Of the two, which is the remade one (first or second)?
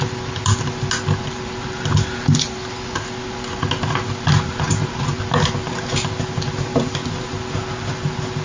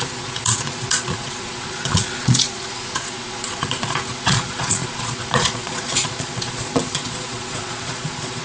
second